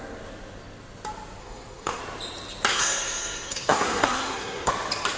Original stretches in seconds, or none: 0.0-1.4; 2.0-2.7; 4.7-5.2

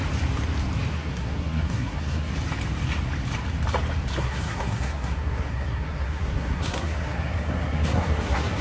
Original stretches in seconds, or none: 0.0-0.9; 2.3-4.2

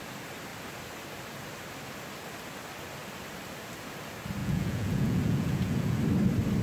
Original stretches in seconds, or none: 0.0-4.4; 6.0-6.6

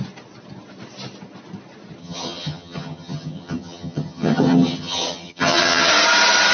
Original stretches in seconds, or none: 0.0-2.0; 5.9-6.5